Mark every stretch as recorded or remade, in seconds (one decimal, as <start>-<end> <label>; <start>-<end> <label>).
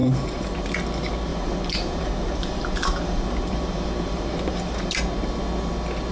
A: 0.0-0.7 remade; 0.7-1.3 recorded; 1.3-5.0 remade; 5.0-6.1 recorded